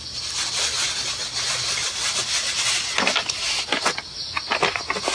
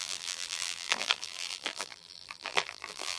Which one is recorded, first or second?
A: first